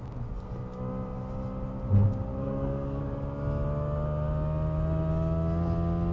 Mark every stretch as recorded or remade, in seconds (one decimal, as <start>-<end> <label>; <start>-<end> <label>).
0.0-2.4 recorded; 2.4-3.0 remade; 3.0-6.1 recorded